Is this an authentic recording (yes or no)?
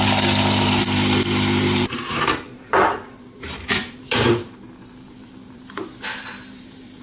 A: no